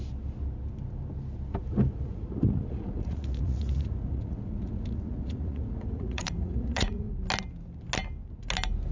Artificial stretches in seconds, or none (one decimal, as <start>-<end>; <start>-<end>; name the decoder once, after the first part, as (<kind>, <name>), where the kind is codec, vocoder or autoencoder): 2.1-7.1 (vocoder, Vocos)